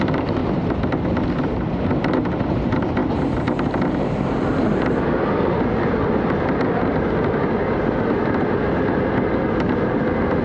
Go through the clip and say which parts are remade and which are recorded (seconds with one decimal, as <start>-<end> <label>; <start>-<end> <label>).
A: 0.0-10.4 recorded